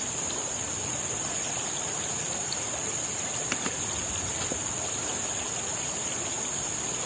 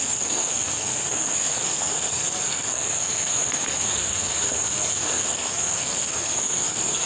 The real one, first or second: first